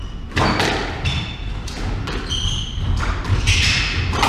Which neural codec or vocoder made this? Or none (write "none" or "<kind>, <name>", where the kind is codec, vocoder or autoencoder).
none